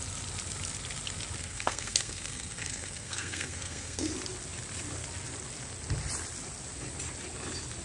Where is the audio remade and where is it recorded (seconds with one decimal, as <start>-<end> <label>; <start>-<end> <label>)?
0.0-1.4 recorded; 1.4-4.1 remade; 4.1-7.8 recorded